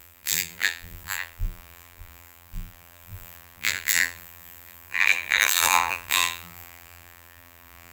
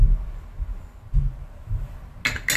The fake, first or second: first